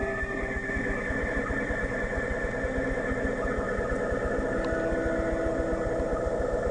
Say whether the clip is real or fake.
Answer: real